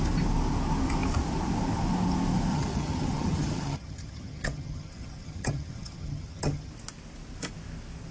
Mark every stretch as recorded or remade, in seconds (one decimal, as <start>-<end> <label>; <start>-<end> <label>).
0.0-2.5 recorded; 2.5-6.7 remade; 6.7-8.1 recorded